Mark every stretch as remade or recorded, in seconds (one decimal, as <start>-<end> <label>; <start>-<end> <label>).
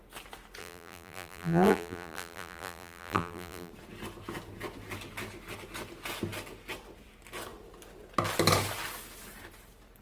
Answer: 0.0-0.6 recorded; 0.6-3.7 remade; 3.7-10.0 recorded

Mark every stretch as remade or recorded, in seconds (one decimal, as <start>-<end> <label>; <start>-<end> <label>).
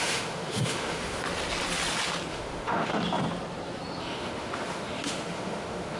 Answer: 0.0-1.2 remade; 1.2-2.3 recorded; 2.3-2.9 remade; 2.9-4.0 recorded; 4.0-6.0 remade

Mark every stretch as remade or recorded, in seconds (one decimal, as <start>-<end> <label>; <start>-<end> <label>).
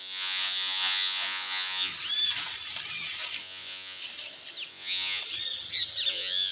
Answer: 0.0-1.9 remade; 1.9-3.4 recorded; 3.4-4.0 remade; 4.0-4.7 recorded; 4.7-5.2 remade; 5.2-6.1 recorded; 6.1-6.5 remade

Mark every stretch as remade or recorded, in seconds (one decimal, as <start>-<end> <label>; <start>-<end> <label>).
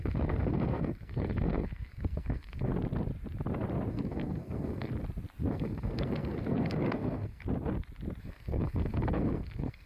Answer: 0.0-2.7 remade; 2.7-3.9 recorded; 3.9-4.9 remade; 4.9-5.5 recorded; 5.5-7.4 remade; 7.4-8.2 recorded; 8.2-9.9 remade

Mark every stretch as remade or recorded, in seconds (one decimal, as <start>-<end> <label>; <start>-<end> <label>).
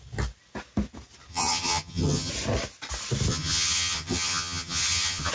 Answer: 0.0-1.3 recorded; 1.3-2.3 remade; 2.3-3.3 recorded; 3.3-5.3 remade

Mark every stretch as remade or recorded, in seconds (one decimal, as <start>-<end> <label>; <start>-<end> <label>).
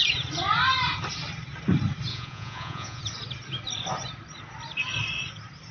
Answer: 0.0-2.1 recorded; 2.1-3.0 remade; 3.0-5.7 recorded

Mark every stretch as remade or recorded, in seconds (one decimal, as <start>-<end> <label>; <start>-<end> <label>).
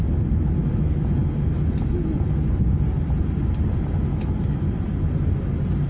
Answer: 0.0-0.6 recorded; 0.6-1.2 remade; 1.2-4.1 recorded; 4.1-4.7 remade; 4.7-5.9 recorded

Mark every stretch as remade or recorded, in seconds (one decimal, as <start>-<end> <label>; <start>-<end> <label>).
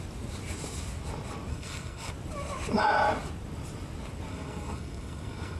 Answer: 0.0-1.5 recorded; 1.5-2.1 remade; 2.1-4.3 recorded; 4.3-5.6 remade